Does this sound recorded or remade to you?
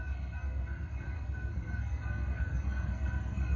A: remade